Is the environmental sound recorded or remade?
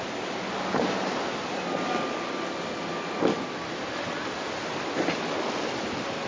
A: recorded